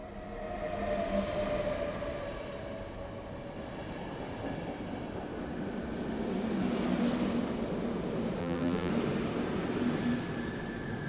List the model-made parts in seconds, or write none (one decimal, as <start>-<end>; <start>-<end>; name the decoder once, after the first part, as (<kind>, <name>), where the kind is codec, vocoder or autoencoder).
8.4-8.9 (vocoder, BigVGAN v2)